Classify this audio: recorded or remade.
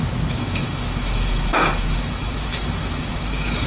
remade